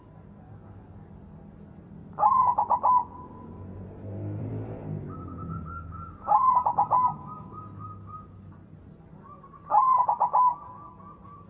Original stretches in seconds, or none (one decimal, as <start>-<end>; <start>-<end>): 0.0-1.8; 4.5-11.5